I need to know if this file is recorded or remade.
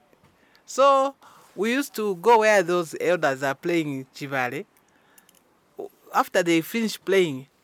recorded